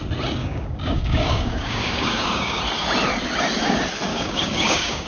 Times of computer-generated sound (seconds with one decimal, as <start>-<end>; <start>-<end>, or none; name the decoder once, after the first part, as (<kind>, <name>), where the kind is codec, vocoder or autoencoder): 0.4-2.6 (codec, DAC); 4.1-5.1